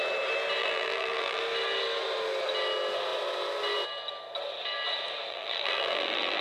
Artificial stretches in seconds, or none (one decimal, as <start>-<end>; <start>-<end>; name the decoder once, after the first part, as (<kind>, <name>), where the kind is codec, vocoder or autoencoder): 0.6-1.4 (vocoder, BigVGAN v2); 5.3-6.4

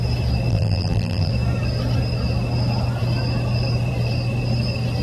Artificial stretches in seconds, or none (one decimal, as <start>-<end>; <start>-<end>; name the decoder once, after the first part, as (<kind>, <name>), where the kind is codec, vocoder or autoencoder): 0.5-1.3 (vocoder, BigVGAN v2)

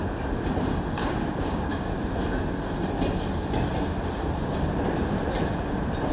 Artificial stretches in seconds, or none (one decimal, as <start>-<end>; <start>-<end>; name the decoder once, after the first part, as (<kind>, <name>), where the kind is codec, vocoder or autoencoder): 1.0-1.9 (codec, DAC)